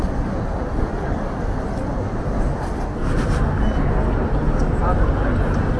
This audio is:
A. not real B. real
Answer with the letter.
B